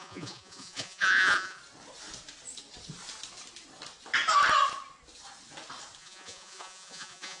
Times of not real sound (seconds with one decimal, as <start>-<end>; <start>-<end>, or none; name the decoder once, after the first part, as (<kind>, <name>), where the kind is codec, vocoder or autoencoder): 0.0-1.6 (vocoder, Vocos); 6.0-7.4